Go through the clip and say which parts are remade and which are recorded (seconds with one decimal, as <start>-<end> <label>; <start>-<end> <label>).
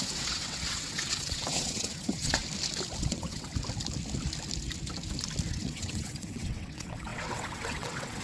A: 0.0-2.4 remade; 2.4-3.0 recorded; 3.0-3.5 remade; 3.5-5.5 recorded; 5.5-8.2 remade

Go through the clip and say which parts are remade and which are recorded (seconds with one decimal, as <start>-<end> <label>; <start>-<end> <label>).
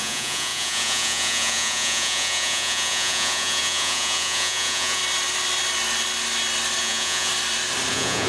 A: 0.0-5.0 remade; 5.0-6.8 recorded; 6.8-7.3 remade; 7.3-7.9 recorded; 7.9-8.3 remade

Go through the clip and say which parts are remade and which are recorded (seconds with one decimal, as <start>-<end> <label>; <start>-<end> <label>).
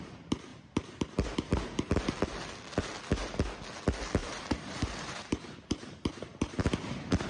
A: 0.0-0.5 recorded; 0.5-2.0 remade; 2.0-4.2 recorded; 4.2-6.6 remade; 6.6-7.3 recorded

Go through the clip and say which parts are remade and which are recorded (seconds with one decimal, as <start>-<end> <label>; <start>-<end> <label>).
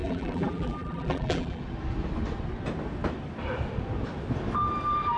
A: 0.0-1.6 remade; 1.6-5.2 recorded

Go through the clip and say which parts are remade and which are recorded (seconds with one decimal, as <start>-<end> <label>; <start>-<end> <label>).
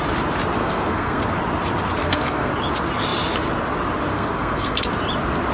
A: 0.0-0.6 recorded; 0.6-1.2 remade; 1.2-2.0 recorded; 2.0-2.5 remade; 2.5-4.1 recorded; 4.1-4.8 remade; 4.8-5.5 recorded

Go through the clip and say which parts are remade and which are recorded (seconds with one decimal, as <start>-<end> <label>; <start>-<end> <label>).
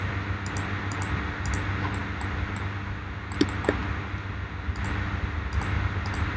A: 0.0-6.4 recorded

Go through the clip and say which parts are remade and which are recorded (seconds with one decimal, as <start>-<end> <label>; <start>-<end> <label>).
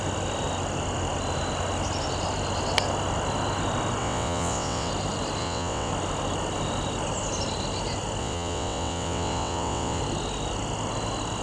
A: 0.0-4.0 recorded; 4.0-4.9 remade; 4.9-5.4 recorded; 5.4-5.9 remade; 5.9-8.2 recorded; 8.2-10.0 remade; 10.0-11.4 recorded